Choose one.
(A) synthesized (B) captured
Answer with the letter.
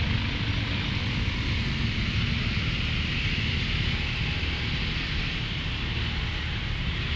B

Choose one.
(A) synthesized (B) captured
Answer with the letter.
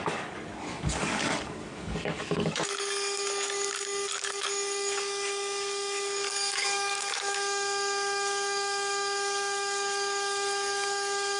A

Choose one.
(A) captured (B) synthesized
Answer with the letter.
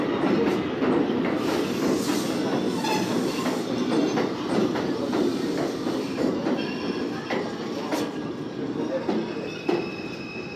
A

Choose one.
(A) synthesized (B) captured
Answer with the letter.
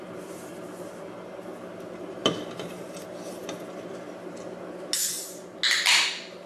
B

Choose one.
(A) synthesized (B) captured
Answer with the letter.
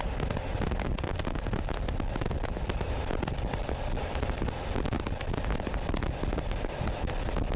B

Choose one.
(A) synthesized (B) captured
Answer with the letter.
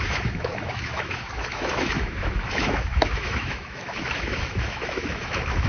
A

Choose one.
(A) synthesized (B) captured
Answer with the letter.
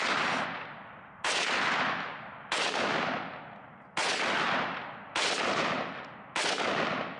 B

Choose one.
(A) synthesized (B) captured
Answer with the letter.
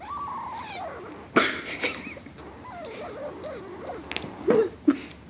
B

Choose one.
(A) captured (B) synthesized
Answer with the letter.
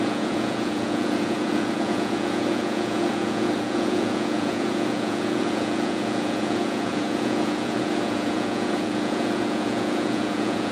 B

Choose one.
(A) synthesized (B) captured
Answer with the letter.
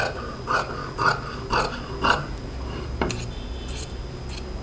B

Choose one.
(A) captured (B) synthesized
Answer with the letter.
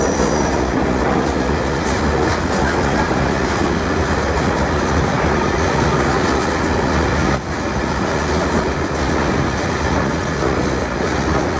B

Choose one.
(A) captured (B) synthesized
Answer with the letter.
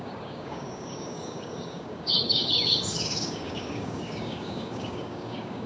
B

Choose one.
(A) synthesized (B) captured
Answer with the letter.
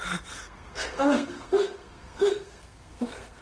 A